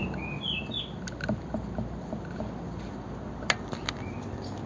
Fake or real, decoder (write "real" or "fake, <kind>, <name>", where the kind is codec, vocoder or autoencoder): real